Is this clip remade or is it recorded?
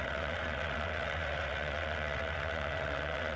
remade